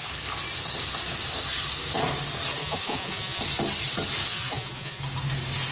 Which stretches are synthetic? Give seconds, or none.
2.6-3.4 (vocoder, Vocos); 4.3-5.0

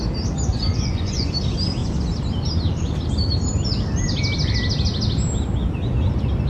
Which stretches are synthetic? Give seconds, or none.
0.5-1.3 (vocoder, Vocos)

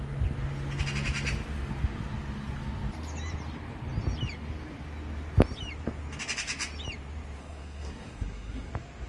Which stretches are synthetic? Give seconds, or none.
7.4-8.7 (codec, SNAC)